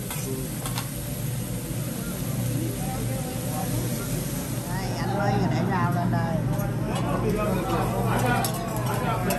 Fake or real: real